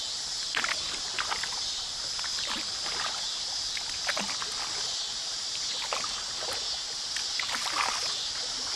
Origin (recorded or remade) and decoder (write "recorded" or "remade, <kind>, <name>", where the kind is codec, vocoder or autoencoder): recorded